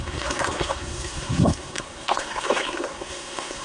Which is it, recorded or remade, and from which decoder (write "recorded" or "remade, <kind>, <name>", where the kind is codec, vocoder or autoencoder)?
remade, codec, SNAC